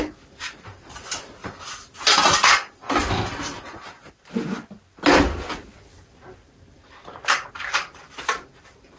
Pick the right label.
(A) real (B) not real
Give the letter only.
A